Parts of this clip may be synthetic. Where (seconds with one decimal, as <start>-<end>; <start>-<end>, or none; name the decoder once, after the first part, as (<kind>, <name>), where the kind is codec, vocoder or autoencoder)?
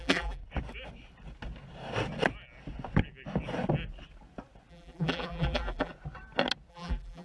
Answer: 0.0-0.4 (vocoder, BigVGAN v2); 4.7-5.9; 6.7-7.2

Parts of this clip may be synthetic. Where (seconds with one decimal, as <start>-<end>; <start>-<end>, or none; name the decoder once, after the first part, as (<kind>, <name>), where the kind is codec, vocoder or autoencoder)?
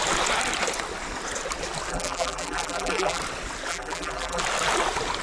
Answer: 1.9-3.2 (vocoder, BigVGAN v2); 3.7-4.4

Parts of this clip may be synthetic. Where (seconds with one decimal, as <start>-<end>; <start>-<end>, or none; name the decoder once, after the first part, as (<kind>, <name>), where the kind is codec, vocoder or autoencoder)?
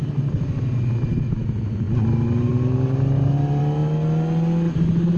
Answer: none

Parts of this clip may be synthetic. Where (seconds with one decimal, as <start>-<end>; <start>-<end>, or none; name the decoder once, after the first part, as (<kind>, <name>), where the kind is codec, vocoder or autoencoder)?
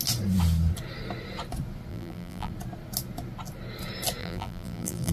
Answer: 1.9-2.5 (vocoder, BigVGAN v2); 4.2-5.1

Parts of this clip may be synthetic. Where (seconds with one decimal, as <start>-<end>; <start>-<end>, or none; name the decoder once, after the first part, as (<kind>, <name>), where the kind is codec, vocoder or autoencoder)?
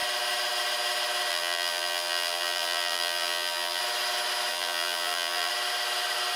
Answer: 1.3-3.8 (vocoder, BigVGAN v2); 4.5-5.5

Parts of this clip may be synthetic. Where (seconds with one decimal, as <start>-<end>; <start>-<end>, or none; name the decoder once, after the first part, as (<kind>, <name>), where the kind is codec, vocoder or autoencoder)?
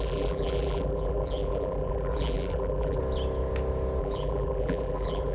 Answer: 0.0-3.0 (vocoder, BigVGAN v2); 4.0-5.3